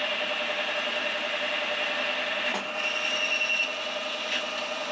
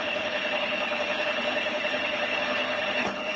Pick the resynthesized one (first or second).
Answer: second